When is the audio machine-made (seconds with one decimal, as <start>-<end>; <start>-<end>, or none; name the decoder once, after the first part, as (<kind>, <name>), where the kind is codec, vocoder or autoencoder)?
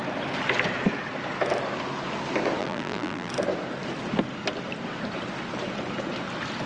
2.6-3.3 (vocoder, BigVGAN v2)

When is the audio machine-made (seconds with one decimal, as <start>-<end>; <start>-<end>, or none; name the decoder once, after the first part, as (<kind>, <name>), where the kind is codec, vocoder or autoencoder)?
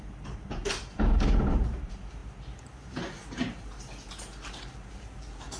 0.0-2.2 (vocoder, BigVGAN v2); 4.9-5.6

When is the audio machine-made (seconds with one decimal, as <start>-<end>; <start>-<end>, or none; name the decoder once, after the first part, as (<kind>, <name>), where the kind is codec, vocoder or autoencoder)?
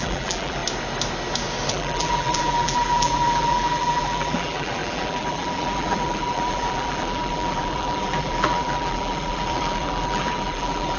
0.0-0.6 (vocoder, BigVGAN v2); 1.7-11.0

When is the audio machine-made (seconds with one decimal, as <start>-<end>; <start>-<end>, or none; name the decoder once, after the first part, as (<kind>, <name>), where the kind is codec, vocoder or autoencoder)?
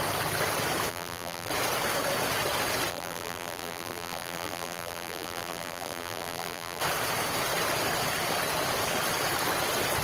0.9-1.5 (vocoder, BigVGAN v2); 2.9-6.8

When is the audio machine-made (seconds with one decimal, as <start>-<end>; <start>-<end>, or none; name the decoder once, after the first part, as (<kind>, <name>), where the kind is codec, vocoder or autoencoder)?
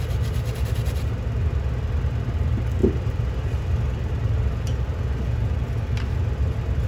2.8-4.1 (vocoder, BigVGAN v2)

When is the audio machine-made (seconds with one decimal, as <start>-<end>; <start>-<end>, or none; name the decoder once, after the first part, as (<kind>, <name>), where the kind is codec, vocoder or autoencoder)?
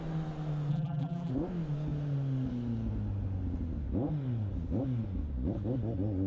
0.7-1.3 (vocoder, BigVGAN v2)